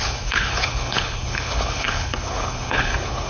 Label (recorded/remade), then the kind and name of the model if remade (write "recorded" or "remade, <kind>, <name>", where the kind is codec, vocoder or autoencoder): remade, codec, HILCodec